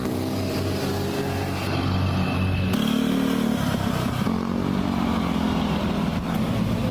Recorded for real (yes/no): yes